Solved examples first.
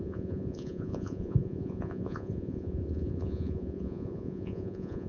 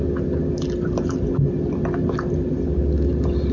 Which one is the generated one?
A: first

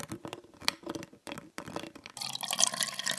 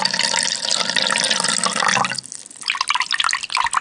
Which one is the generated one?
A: first